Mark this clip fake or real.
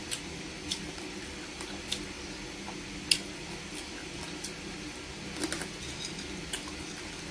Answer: real